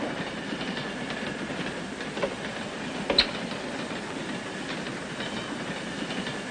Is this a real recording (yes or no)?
yes